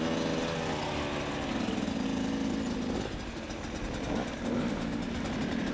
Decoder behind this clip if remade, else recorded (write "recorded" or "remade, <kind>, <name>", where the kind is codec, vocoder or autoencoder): recorded